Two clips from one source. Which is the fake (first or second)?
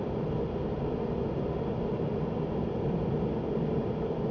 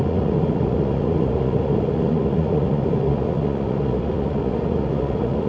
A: second